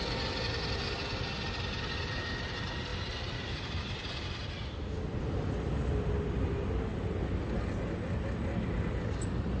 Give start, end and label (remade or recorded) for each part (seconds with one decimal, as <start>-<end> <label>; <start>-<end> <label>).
0.0-2.9 recorded; 2.9-5.9 remade; 5.9-6.9 recorded; 6.9-7.6 remade; 7.6-9.6 recorded